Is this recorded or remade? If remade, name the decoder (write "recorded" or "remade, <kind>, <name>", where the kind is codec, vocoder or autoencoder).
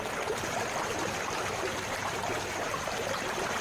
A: remade, vocoder, BigVGAN v2